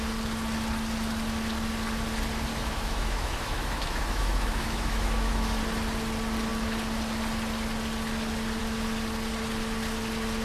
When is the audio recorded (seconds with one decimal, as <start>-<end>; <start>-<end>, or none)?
0.0-2.5; 5.6-10.4